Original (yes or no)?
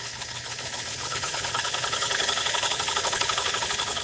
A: no